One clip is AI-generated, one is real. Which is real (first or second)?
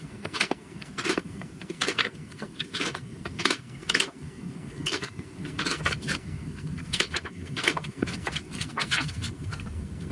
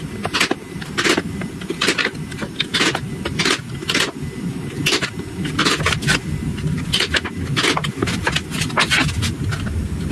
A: second